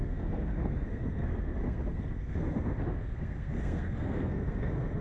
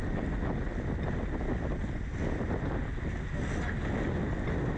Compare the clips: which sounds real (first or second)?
second